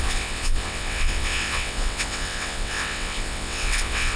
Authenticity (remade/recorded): remade